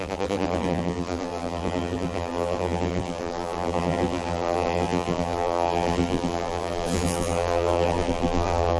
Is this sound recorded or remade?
remade